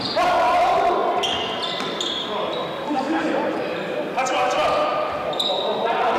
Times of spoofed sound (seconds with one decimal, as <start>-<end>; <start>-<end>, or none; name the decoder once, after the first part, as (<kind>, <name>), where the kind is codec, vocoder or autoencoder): none